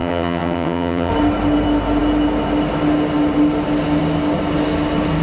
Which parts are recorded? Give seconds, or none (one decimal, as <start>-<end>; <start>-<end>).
1.1-5.2